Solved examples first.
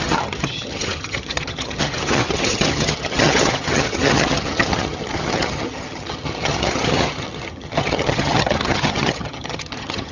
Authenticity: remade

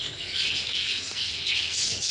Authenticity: remade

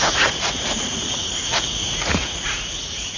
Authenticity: remade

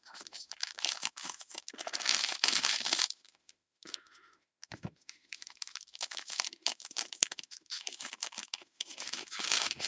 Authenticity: remade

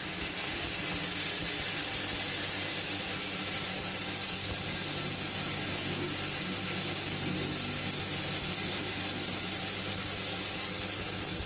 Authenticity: recorded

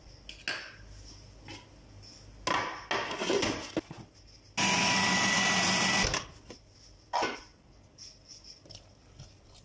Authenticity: recorded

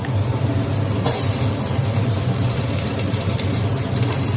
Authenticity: remade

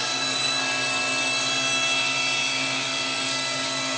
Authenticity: remade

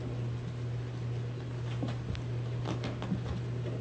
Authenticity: recorded